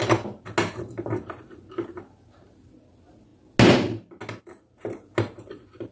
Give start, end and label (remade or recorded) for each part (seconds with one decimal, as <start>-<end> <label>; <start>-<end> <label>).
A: 0.0-5.9 recorded